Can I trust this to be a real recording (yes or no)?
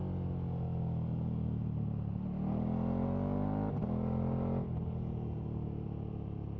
yes